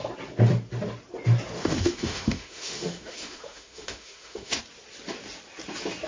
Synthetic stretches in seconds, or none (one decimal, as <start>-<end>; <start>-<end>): 1.6-4.6